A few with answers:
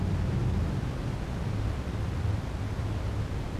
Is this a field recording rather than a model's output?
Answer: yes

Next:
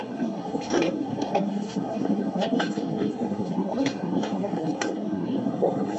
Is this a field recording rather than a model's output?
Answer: no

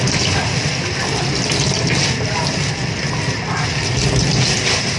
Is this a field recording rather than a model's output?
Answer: yes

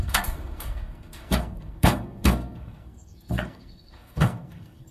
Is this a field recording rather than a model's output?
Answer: no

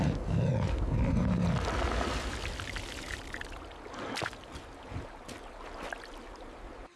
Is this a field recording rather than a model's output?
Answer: yes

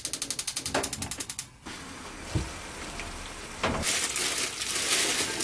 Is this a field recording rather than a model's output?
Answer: yes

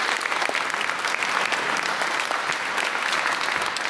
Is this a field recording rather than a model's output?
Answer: yes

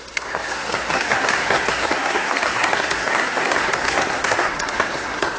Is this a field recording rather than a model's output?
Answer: no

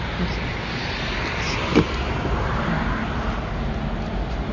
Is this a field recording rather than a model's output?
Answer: yes